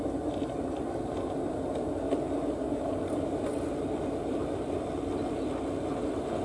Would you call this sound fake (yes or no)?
no